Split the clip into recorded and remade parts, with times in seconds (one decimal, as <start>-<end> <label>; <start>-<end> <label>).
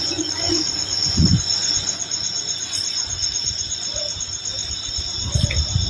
0.0-3.9 remade; 3.9-5.9 recorded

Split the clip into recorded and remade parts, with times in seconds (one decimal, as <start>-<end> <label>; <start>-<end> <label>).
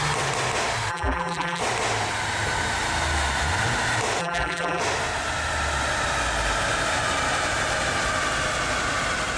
0.0-0.9 recorded; 0.9-1.6 remade; 1.6-4.2 recorded; 4.2-4.8 remade; 4.8-9.4 recorded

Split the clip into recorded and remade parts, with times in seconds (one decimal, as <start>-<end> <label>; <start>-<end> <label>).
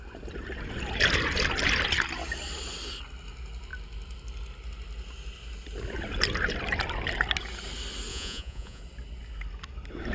0.0-8.1 recorded; 8.1-8.8 remade; 8.8-10.1 recorded